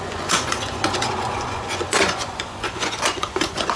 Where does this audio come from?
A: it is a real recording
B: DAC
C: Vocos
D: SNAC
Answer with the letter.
C